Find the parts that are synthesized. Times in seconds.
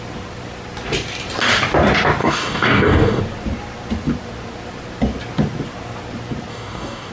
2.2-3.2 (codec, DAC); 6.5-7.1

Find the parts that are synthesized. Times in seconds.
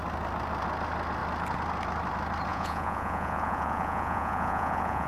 2.5-5.1 (vocoder, Vocos)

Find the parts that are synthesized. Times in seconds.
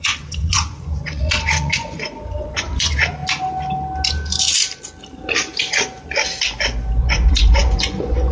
0.0-3.2 (vocoder, Vocos); 7.0-8.3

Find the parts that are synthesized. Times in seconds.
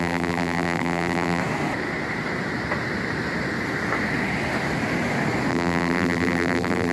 0.0-1.4 (vocoder, BigVGAN v2); 5.5-6.9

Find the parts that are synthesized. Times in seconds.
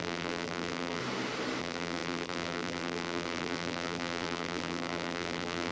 0.0-1.0 (vocoder, BigVGAN v2); 1.6-5.7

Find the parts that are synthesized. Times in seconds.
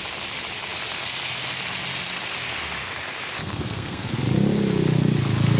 3.4-4.1 (codec, SNAC)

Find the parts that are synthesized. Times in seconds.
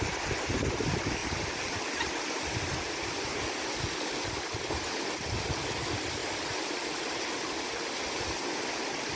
1.2-4.7 (vocoder, BigVGAN v2)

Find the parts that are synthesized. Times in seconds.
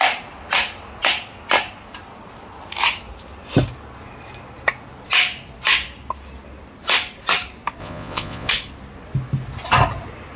7.8-8.5 (vocoder, Vocos)